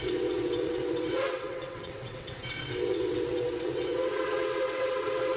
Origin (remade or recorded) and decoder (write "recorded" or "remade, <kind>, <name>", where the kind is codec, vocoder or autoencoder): remade, vocoder, WaveNeXt